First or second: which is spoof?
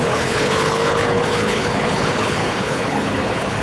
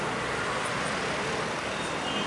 first